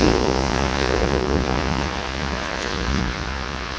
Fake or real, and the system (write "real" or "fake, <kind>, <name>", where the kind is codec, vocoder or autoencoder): fake, vocoder, Vocos